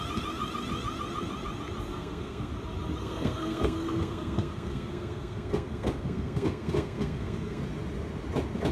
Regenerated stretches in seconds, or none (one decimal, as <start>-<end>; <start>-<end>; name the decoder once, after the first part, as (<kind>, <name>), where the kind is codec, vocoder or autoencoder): 1.9-2.5 (codec, SNAC); 3.0-7.6